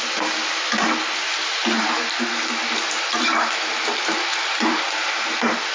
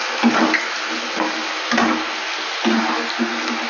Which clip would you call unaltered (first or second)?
second